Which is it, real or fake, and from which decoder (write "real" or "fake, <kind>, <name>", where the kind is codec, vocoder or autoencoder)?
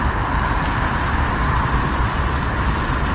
real